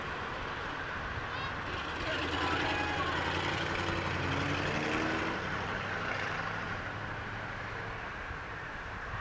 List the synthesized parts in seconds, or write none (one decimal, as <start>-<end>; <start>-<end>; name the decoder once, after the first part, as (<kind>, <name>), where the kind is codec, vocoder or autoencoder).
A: 0.0-2.1 (vocoder, BigVGAN v2); 6.1-9.2